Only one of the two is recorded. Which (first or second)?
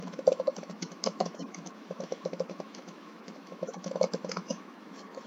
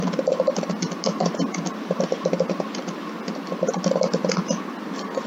second